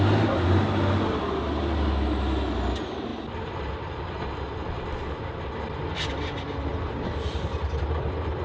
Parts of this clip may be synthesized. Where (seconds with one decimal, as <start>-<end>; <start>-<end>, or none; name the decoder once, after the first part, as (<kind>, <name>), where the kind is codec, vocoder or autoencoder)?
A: none